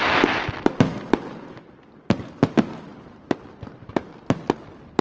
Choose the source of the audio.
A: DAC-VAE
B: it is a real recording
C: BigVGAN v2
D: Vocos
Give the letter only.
B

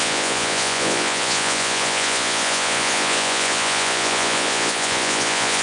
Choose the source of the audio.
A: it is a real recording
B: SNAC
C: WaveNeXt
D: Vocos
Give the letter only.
D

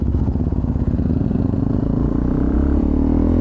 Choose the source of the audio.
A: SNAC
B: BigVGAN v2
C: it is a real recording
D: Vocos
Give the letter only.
D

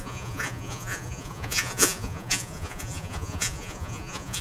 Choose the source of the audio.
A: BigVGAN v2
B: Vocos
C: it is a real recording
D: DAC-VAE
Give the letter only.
B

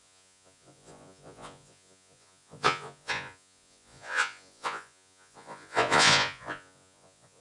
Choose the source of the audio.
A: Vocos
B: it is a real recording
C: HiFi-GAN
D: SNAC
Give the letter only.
A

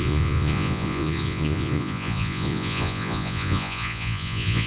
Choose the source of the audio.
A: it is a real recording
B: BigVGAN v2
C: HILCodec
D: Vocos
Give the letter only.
D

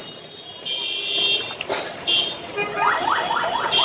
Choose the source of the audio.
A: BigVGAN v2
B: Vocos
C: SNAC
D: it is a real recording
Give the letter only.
D